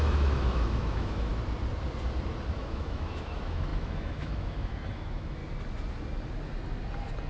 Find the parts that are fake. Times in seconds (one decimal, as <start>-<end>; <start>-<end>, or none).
0.0-1.3; 2.6-5.4